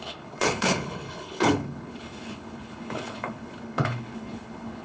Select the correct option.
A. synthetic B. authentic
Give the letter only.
A